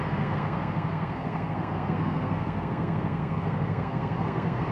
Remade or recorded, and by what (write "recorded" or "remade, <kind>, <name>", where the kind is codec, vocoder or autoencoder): remade, codec, SNAC